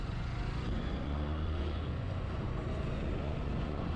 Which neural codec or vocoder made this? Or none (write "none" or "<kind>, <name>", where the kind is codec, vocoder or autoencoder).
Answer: vocoder, Vocos